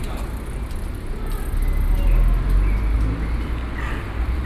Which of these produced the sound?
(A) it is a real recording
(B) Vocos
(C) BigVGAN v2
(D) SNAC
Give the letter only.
A